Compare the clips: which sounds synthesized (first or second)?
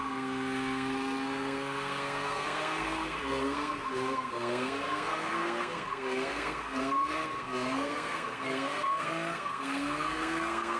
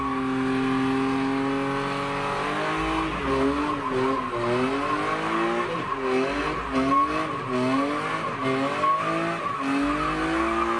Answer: first